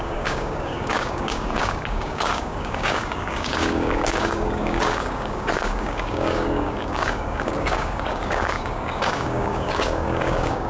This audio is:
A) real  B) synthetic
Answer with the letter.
B